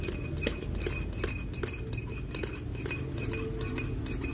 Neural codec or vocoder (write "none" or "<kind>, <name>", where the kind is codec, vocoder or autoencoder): none